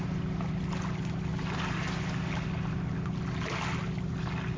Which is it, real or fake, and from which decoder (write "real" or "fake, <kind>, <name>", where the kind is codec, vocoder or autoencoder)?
real